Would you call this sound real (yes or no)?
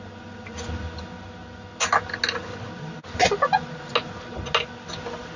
yes